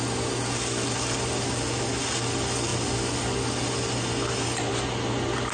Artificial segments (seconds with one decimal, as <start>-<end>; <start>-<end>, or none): none